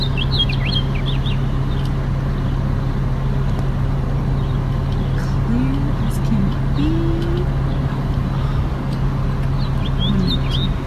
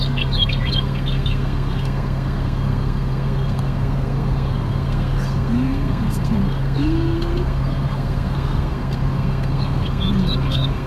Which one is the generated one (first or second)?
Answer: second